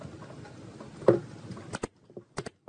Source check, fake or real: real